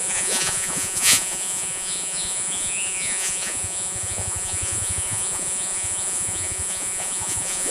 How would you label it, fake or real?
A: fake